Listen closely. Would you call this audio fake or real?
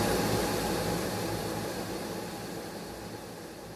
real